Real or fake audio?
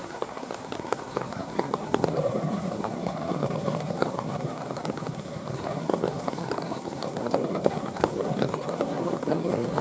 fake